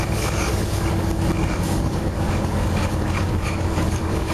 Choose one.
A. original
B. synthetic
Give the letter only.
B